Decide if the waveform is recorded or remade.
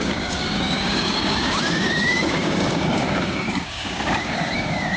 remade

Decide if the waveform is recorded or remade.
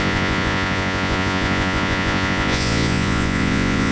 remade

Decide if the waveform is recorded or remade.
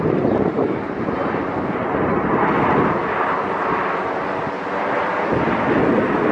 recorded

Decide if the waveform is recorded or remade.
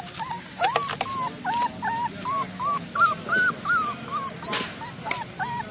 recorded